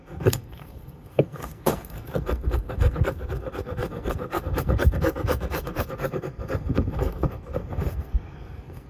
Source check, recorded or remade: remade